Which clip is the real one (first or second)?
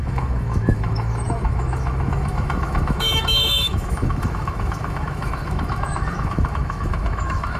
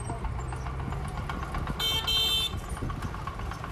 second